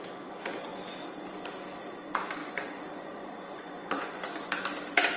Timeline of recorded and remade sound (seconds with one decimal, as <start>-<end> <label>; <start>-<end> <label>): 0.0-2.4 recorded; 2.4-4.5 remade; 4.5-5.2 recorded